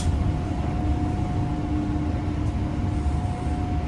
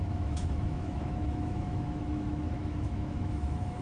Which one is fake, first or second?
second